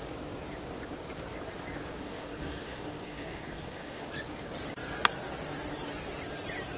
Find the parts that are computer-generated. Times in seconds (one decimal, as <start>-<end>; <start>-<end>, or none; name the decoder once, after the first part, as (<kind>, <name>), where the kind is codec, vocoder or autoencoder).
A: 2.0-4.1 (codec, DAC)